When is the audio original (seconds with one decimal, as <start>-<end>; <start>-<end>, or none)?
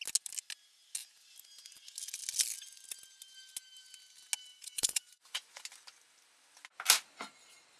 0.0-4.5; 5.6-7.8